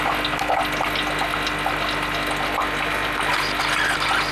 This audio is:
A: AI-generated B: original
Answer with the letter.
B